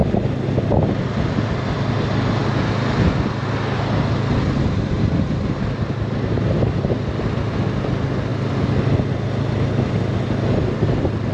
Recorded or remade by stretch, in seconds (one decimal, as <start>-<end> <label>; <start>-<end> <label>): 0.0-11.3 recorded